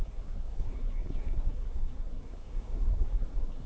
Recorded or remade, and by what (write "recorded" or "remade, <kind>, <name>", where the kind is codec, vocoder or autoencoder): remade, codec, SNAC